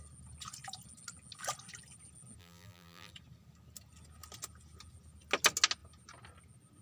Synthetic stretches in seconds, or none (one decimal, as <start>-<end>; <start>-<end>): 2.4-3.1